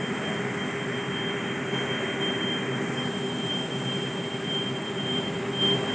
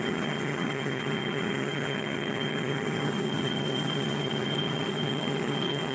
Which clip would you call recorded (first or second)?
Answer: first